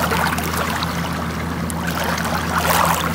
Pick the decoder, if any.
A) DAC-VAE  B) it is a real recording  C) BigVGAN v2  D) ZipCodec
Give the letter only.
B